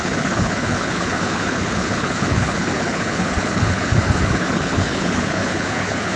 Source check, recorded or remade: remade